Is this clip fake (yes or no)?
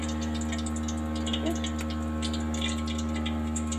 no